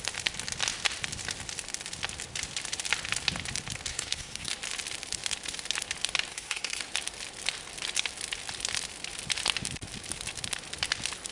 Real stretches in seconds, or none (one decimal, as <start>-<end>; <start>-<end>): 0.0-3.9; 4.5-6.3; 6.8-11.3